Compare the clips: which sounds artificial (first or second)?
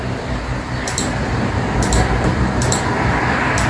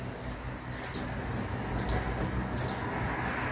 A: first